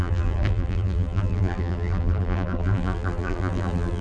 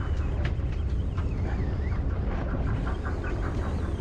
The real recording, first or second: second